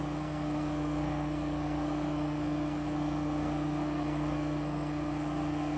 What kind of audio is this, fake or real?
fake